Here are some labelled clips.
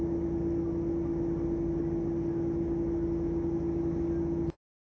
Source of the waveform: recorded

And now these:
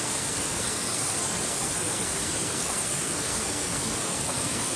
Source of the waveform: remade